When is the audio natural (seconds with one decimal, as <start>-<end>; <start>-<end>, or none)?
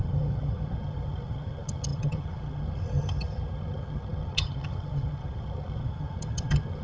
none